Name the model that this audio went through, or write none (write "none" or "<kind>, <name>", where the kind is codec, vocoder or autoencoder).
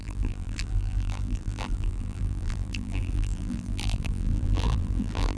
vocoder, BigVGAN v2